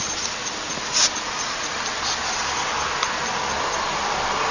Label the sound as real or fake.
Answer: real